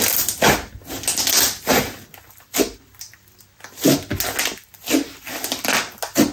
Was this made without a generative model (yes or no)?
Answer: yes